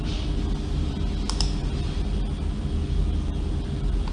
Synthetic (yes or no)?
no